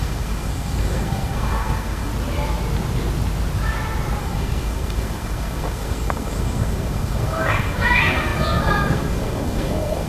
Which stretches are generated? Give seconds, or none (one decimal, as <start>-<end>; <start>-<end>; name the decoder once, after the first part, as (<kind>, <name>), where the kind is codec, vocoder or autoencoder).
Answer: 0.0-2.1 (codec, SNAC); 4.2-10.1